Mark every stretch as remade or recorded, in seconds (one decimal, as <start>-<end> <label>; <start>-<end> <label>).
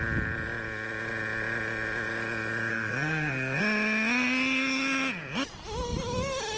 0.0-2.7 recorded; 2.7-3.6 remade; 3.6-6.6 recorded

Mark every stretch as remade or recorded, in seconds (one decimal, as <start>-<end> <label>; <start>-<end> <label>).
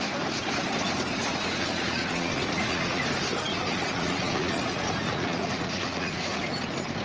0.0-1.3 recorded; 1.3-3.0 remade; 3.0-3.5 recorded; 3.5-6.4 remade; 6.4-7.0 recorded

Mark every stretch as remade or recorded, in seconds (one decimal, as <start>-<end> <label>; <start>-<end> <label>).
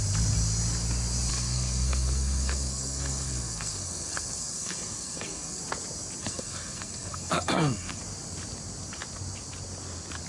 0.0-1.3 recorded; 1.3-5.6 remade; 5.6-6.2 recorded; 6.2-8.0 remade; 8.0-10.3 recorded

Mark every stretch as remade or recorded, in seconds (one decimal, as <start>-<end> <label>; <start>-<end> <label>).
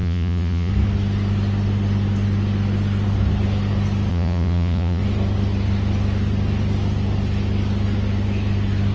0.0-0.7 remade; 0.7-4.1 recorded; 4.1-5.0 remade; 5.0-8.9 recorded